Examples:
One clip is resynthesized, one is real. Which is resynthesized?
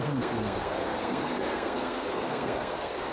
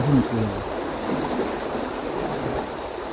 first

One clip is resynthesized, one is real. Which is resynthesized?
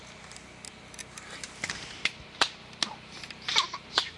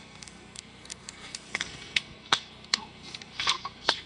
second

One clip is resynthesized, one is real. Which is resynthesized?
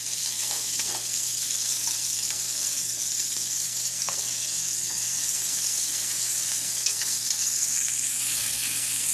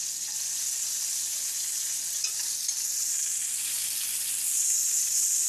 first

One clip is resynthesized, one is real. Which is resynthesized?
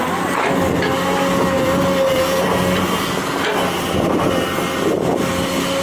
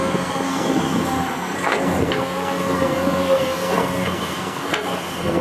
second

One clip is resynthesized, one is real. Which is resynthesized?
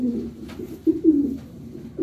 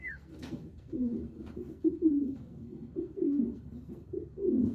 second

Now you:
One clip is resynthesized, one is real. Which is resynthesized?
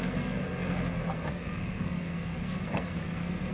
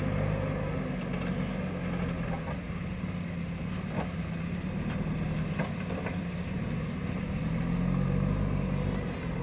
first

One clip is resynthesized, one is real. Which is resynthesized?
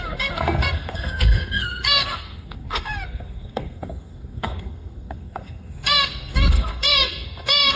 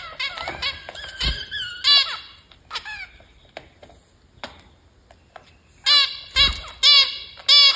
first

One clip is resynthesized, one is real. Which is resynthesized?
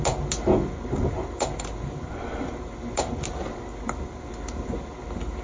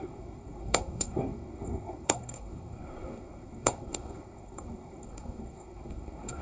second